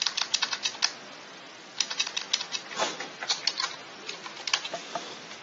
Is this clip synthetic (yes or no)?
no